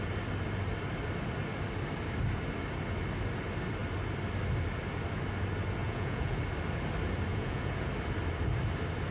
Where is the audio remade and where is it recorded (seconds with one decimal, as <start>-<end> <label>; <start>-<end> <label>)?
0.0-5.8 recorded; 5.8-6.4 remade; 6.4-7.3 recorded; 7.3-7.9 remade; 7.9-9.1 recorded